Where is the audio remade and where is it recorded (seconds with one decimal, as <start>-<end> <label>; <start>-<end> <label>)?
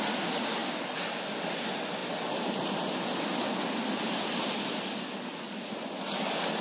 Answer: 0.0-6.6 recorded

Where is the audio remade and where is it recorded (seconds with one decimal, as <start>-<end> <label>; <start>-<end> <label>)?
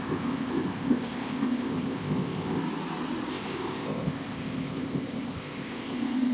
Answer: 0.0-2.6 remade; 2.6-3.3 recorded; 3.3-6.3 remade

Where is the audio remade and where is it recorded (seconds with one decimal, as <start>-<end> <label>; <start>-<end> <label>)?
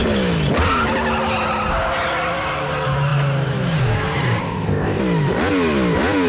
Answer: 0.0-4.4 recorded; 4.4-5.0 remade; 5.0-6.3 recorded